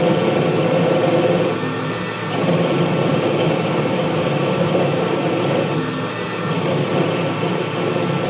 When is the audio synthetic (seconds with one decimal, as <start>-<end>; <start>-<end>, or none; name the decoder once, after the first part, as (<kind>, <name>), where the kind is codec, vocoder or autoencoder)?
3.1-5.2 (codec, DAC)